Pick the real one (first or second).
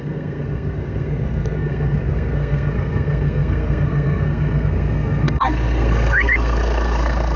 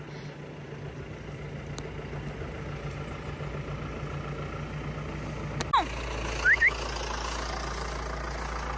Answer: second